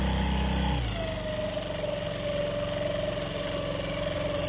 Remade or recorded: recorded